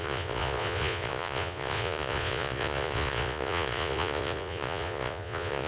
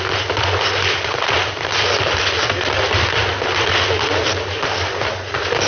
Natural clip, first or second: second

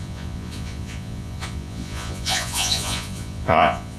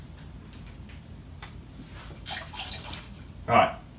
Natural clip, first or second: second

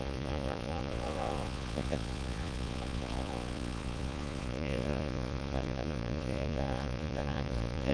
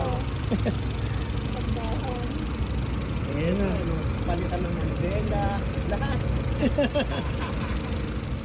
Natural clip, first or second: second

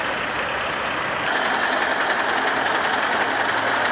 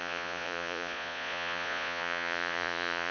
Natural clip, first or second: first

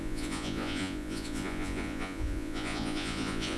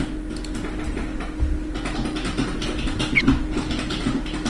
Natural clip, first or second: second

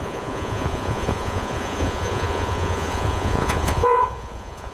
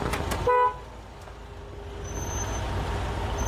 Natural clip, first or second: second